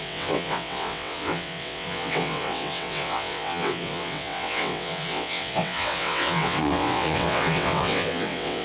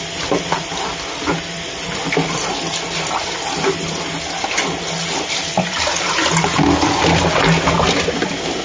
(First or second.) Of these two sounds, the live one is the second